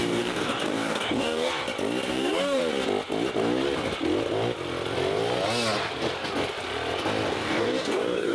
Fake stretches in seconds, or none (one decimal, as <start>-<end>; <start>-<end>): 0.0-1.5; 2.1-2.6; 7.3-8.3